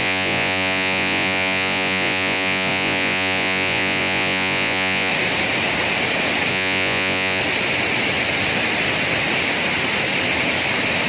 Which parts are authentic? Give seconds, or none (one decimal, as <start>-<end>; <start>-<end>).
5.1-6.5; 7.4-11.1